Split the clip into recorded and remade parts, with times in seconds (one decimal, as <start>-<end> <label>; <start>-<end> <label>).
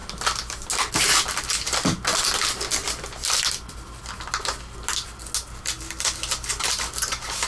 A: 0.0-7.5 recorded